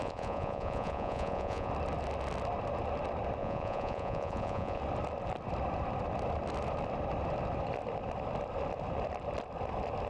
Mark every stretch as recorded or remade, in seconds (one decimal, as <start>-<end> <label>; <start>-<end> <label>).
0.0-1.7 remade; 1.7-3.4 recorded; 3.4-4.8 remade; 4.8-10.1 recorded